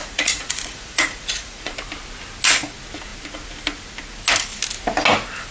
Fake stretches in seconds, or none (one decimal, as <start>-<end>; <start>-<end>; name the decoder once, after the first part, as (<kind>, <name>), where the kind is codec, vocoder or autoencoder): 0.0-1.7 (vocoder, Vocos)